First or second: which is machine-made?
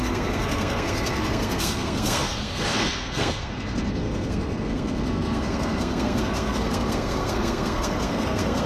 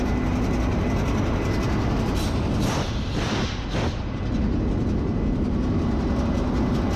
first